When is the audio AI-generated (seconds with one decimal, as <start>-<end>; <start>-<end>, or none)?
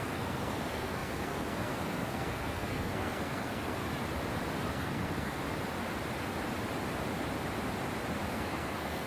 0.0-3.8; 4.7-5.4; 8.3-9.1